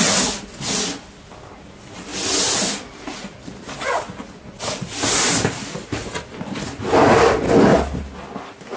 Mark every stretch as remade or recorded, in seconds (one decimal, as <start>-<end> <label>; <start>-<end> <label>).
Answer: 0.0-8.8 recorded